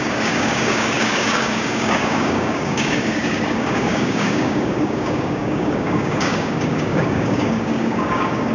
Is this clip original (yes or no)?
no